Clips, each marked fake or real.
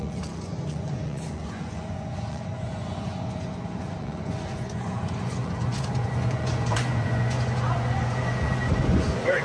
fake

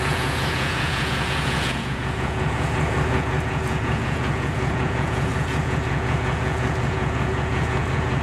fake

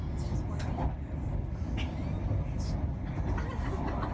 real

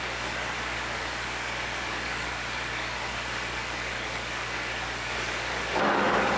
fake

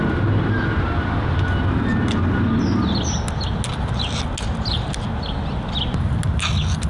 real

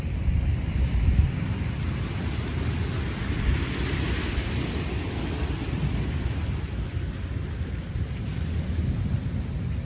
real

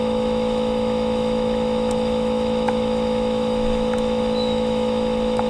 fake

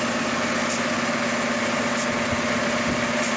real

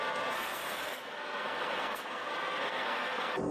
fake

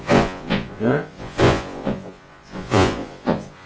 fake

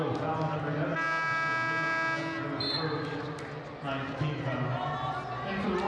real